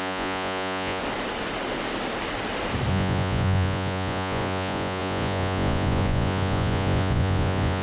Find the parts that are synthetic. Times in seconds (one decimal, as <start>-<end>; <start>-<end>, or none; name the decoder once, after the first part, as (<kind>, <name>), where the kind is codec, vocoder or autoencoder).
0.0-1.0 (vocoder, Vocos); 2.9-7.8